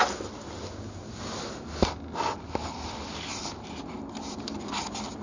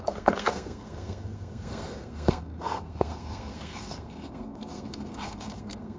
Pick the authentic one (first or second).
first